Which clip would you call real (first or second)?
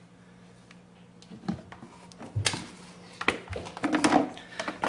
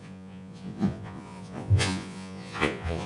first